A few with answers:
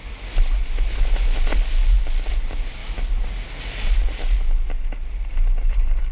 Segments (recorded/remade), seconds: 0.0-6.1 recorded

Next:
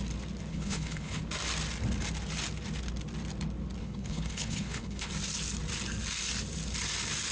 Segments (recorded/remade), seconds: 0.0-0.5 recorded; 0.5-1.2 remade; 1.2-3.8 recorded; 3.8-5.1 remade; 5.1-7.3 recorded

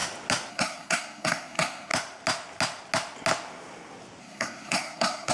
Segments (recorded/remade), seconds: 0.0-0.5 recorded; 0.5-1.9 remade; 1.9-4.2 recorded; 4.2-5.3 remade